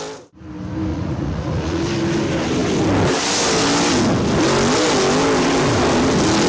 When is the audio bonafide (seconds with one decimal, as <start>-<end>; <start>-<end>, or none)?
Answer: 0.0-0.9; 1.8-6.5